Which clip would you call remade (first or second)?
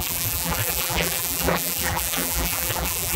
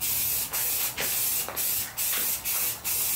first